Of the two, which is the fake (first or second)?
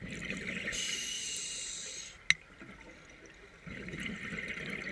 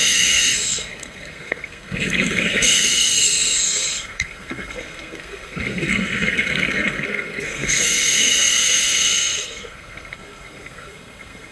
second